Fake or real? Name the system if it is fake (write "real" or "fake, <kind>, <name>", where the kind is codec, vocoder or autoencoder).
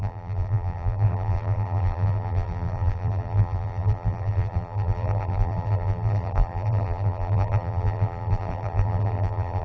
fake, vocoder, BigVGAN v2